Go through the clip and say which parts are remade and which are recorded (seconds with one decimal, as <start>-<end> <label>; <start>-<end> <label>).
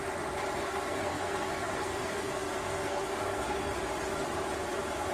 0.0-0.6 recorded; 0.6-3.7 remade; 3.7-5.1 recorded